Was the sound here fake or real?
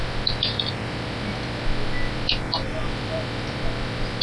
real